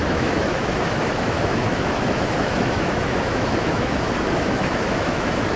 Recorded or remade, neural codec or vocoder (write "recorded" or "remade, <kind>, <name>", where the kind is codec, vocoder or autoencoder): remade, autoencoder, DAC-VAE